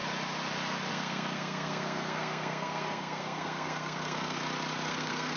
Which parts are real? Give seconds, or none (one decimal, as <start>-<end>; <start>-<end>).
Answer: 0.0-0.9; 4.4-4.9